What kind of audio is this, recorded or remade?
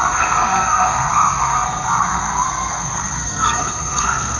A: remade